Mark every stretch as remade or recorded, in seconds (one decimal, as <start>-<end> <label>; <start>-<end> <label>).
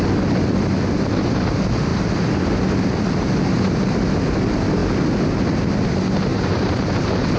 0.0-6.3 recorded; 6.3-7.0 remade; 7.0-7.4 recorded